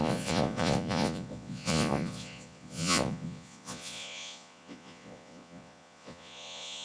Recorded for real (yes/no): no